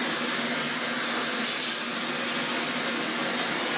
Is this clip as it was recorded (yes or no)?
yes